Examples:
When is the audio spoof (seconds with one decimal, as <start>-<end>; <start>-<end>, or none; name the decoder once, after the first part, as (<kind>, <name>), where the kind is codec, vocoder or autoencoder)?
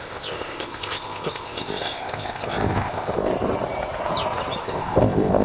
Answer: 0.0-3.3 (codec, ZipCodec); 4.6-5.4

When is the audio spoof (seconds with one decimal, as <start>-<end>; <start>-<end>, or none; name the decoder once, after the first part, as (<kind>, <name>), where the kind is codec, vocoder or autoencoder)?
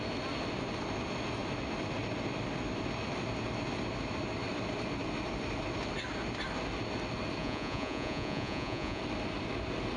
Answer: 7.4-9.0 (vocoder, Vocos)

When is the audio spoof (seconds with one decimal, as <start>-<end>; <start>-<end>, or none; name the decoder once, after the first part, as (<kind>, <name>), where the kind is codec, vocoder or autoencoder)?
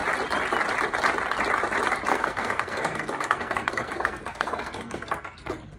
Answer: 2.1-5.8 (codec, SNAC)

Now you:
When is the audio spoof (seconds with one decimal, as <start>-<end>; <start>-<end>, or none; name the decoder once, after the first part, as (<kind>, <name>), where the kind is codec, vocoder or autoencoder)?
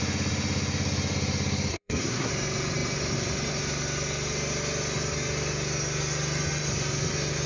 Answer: 1.7-2.3 (codec, SNAC)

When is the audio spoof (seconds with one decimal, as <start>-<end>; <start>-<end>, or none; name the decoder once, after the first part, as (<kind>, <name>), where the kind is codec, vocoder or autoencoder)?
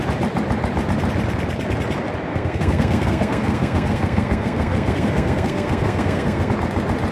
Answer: 2.3-6.5 (codec, SNAC)